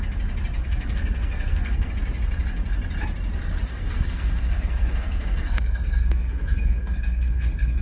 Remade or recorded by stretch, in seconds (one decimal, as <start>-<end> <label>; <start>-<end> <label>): 0.0-0.6 recorded; 0.6-1.9 remade; 1.9-3.7 recorded; 3.7-7.8 remade